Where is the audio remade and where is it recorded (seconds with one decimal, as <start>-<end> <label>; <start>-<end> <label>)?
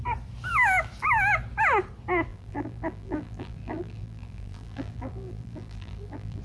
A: 0.0-2.3 recorded; 2.3-6.4 remade